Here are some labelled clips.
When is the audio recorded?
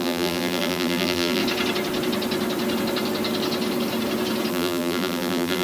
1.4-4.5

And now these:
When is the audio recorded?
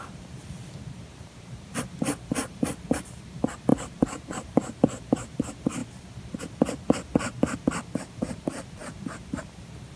5.8-7.5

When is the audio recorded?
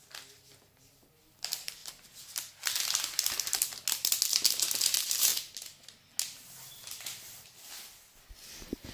0.0-8.9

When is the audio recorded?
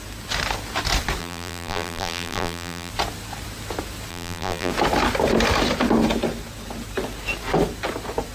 0.0-1.2; 2.9-4.1; 4.7-8.3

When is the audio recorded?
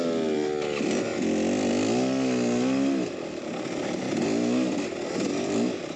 0.0-6.0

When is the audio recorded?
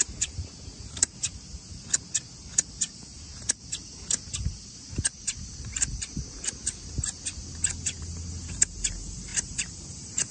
1.7-2.6; 3.3-8.5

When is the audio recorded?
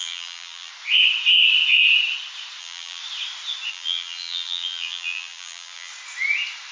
0.7-2.6; 3.0-3.7; 5.9-6.7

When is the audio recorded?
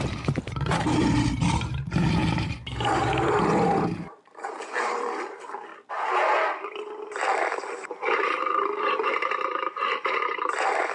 5.7-8.4